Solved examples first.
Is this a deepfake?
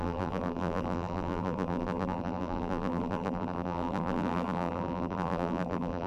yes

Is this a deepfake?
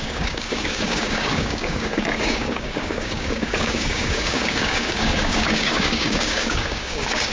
yes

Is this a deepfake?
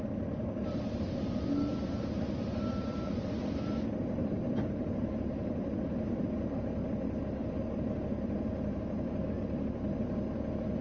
no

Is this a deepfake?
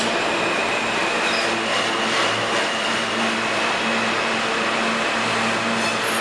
no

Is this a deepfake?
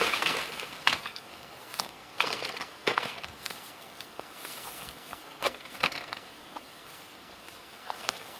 yes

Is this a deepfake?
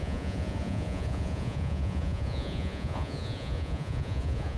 yes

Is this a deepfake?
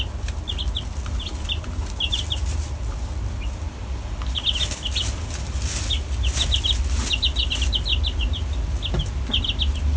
no